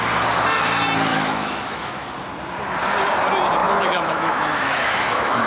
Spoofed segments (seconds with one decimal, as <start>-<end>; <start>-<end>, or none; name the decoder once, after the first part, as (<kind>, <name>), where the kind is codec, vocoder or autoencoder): 1.1-2.1 (autoencoder, DAC-VAE); 3.6-5.5